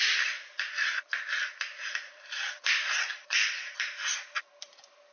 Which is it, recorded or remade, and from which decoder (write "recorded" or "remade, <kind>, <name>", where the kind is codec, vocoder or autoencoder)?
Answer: recorded